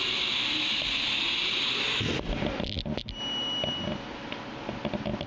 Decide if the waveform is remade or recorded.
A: recorded